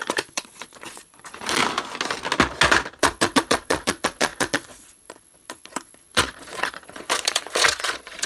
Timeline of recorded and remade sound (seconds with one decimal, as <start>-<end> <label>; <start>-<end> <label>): 0.0-1.6 remade; 1.6-3.0 recorded; 3.0-8.3 remade